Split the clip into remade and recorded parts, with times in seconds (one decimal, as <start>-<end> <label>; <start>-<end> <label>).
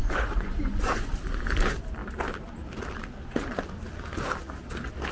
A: 0.0-1.1 remade; 1.1-5.1 recorded